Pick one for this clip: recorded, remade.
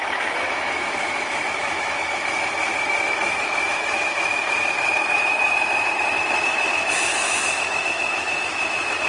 remade